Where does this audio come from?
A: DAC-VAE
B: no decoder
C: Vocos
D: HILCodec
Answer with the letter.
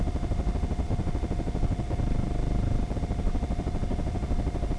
B